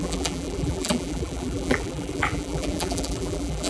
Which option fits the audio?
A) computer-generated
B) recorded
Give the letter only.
A